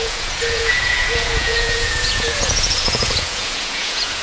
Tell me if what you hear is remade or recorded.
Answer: remade